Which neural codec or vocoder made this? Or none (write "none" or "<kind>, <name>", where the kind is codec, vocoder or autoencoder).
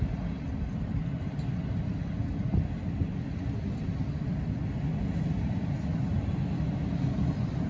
none